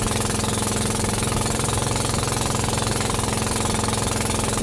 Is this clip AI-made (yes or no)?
no